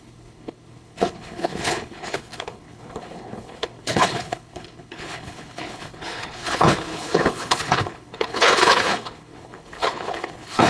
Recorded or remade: remade